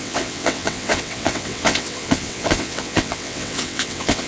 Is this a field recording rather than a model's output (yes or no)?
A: no